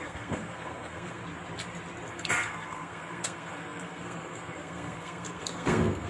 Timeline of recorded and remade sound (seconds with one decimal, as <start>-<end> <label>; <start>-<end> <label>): 0.0-1.2 remade; 1.2-2.1 recorded; 2.1-6.1 remade